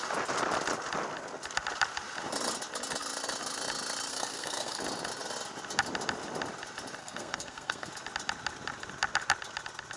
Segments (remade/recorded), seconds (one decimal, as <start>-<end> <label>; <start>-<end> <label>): 0.0-4.1 recorded; 4.1-4.8 remade; 4.8-7.0 recorded; 7.0-7.9 remade; 7.9-10.0 recorded